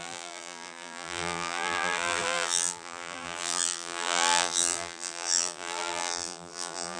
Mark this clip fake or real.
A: fake